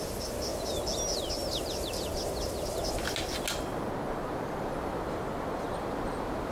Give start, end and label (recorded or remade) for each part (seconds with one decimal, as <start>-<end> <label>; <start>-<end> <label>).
0.0-0.5 remade; 0.5-1.6 recorded; 1.6-2.1 remade; 2.1-4.1 recorded; 4.1-6.5 remade